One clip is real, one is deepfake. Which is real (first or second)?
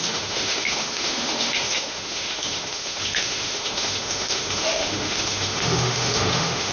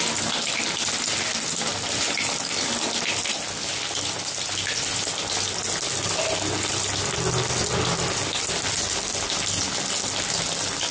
second